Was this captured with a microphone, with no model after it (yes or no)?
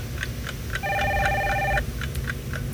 yes